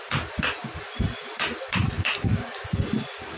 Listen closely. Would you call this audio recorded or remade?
recorded